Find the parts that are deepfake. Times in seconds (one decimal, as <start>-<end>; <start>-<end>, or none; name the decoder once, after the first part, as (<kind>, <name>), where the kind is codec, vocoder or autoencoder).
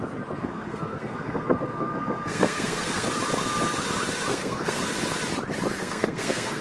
0.4-3.1 (codec, SNAC); 4.3-4.8; 5.8-6.6